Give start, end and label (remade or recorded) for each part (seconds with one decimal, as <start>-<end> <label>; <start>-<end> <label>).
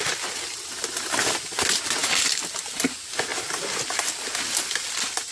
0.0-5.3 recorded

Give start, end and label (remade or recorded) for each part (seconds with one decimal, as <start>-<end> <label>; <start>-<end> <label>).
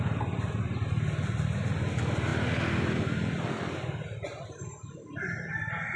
0.0-6.0 recorded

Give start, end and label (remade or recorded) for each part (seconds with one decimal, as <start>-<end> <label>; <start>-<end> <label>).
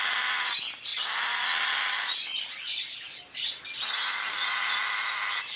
0.0-5.6 recorded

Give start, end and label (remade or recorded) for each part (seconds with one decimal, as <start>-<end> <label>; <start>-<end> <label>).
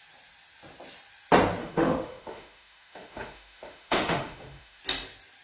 0.0-1.6 recorded; 1.6-4.8 remade; 4.8-5.4 recorded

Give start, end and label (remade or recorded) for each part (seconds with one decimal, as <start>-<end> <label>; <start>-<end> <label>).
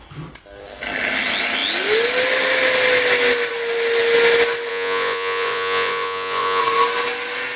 0.0-4.7 recorded; 4.7-6.6 remade; 6.6-7.6 recorded